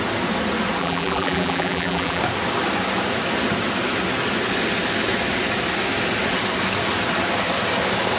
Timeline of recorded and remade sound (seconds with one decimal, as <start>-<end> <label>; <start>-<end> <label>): 0.0-0.8 recorded; 0.8-2.2 remade; 2.2-8.2 recorded